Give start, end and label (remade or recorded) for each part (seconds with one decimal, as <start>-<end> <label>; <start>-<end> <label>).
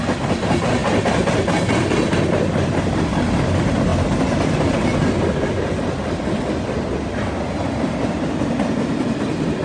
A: 0.0-9.6 recorded